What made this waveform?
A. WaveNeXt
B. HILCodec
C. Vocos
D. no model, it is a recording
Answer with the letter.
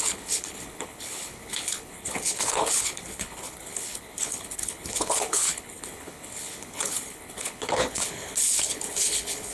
B